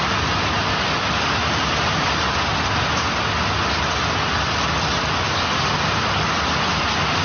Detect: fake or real real